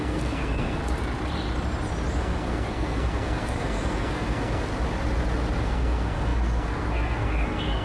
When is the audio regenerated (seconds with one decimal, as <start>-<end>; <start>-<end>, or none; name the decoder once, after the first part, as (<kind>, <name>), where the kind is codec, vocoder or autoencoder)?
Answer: 0.0-0.8 (codec, SNAC); 2.2-4.7; 5.6-7.8